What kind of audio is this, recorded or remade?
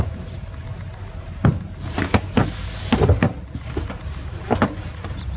recorded